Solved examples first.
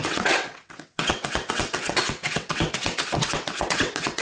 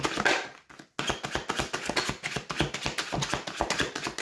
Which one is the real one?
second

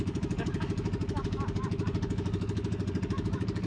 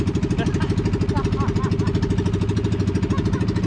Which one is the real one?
second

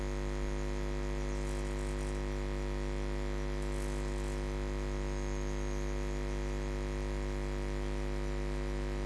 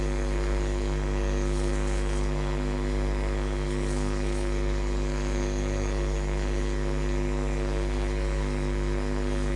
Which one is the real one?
first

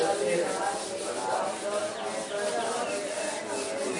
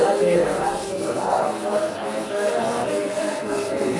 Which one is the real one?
first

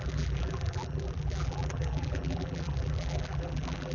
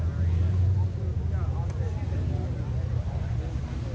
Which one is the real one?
second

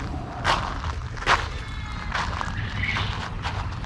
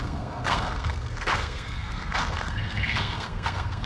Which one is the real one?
first